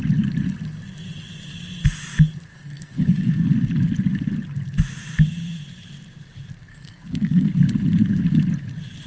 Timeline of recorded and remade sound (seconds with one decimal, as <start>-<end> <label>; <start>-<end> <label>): 0.0-2.5 recorded; 2.5-3.5 remade; 3.5-6.7 recorded; 6.7-7.5 remade; 7.5-9.1 recorded